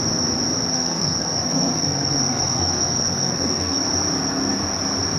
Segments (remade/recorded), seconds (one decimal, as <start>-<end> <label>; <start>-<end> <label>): 0.0-0.7 recorded; 0.7-3.8 remade; 3.8-5.2 recorded